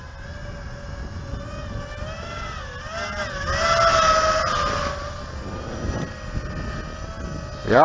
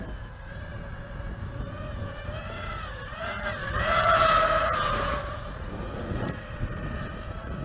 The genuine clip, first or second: first